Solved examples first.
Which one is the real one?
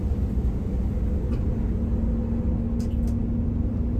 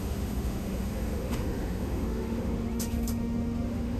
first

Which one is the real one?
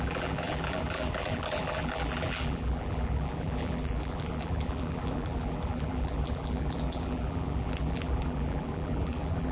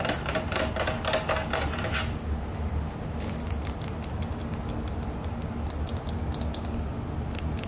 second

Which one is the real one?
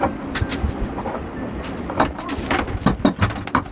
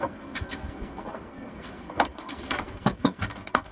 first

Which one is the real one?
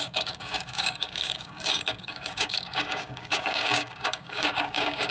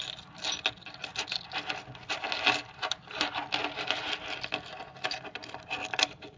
second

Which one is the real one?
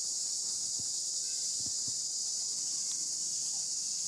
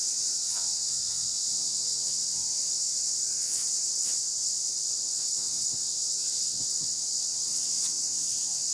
first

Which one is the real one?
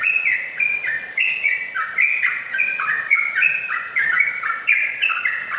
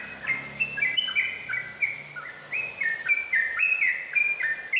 second